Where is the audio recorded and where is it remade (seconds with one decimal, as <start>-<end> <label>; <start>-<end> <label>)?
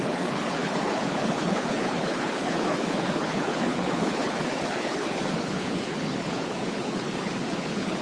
0.0-8.0 remade